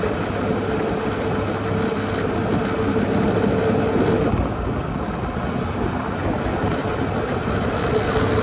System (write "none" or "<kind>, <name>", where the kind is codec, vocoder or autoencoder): none